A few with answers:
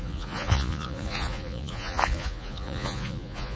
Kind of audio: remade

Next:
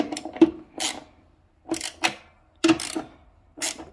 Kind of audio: recorded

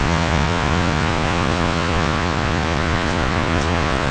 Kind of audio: remade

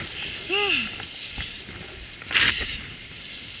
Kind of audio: recorded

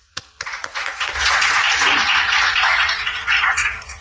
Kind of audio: remade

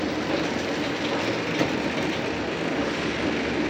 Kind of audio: recorded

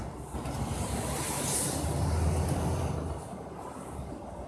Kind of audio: recorded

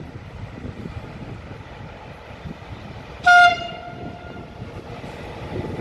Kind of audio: recorded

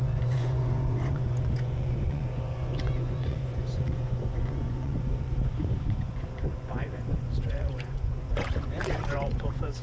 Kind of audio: remade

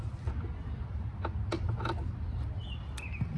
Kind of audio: recorded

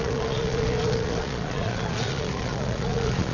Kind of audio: remade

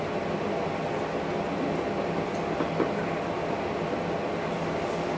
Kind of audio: recorded